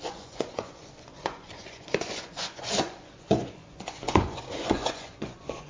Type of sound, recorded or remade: remade